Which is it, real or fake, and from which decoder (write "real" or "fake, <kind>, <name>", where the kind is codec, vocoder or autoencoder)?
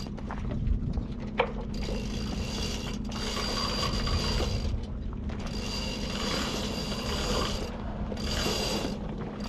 real